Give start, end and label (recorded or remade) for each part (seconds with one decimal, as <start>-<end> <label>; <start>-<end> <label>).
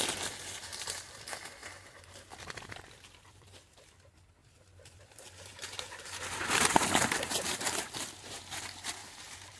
0.0-0.7 recorded; 0.7-1.2 remade; 1.2-1.6 recorded; 1.6-2.3 remade; 2.3-4.4 recorded; 4.4-8.4 remade; 8.4-9.0 recorded; 9.0-9.6 remade